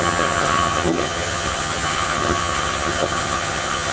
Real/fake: fake